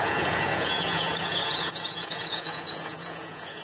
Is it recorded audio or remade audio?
remade